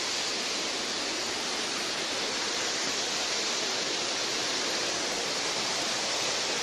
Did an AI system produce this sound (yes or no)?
no